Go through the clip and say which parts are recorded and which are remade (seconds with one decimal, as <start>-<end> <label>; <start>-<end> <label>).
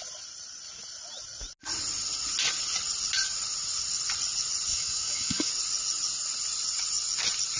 0.0-4.7 recorded; 4.7-5.5 remade; 5.5-7.6 recorded